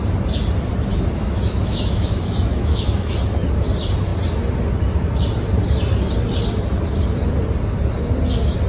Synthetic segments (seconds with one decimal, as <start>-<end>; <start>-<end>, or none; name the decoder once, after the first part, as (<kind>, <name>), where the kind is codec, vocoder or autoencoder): 0.9-3.1 (autoencoder, DAC-VAE)